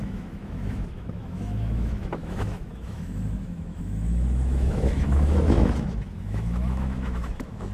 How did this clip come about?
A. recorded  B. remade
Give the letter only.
B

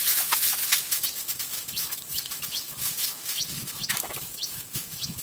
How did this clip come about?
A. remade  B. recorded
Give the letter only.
A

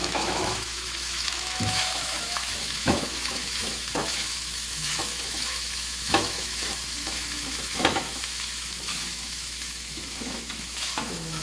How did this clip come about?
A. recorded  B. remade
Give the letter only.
B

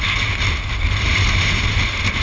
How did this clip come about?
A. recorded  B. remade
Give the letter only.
A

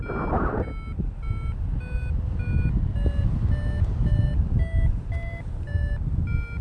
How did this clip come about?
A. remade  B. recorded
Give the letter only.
B